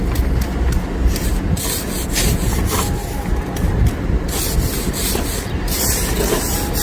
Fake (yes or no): no